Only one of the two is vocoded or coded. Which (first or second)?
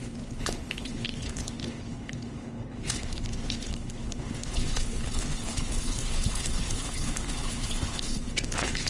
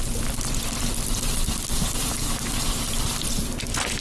first